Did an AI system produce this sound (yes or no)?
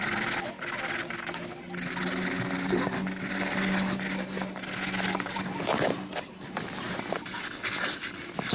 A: no